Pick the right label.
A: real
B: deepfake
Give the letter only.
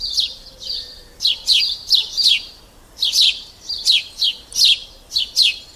B